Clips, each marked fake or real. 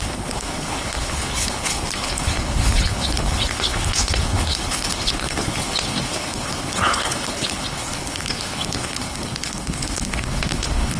fake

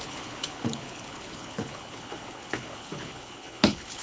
fake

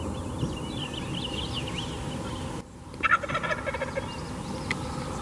real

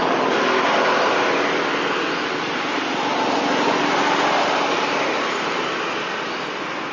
real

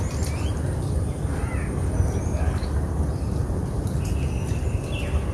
real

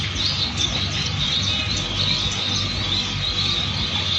real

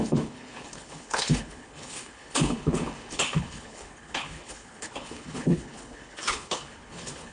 fake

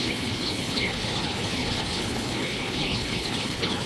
fake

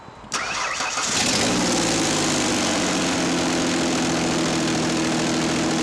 real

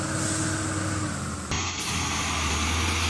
real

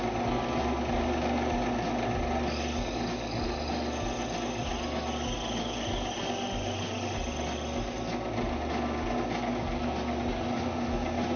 real